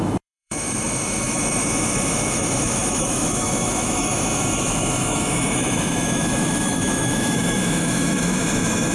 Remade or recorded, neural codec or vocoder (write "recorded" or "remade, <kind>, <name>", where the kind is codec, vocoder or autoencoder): remade, autoencoder, DAC-VAE